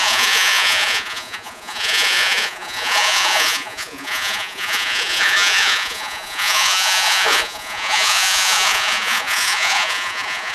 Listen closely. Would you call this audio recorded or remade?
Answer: remade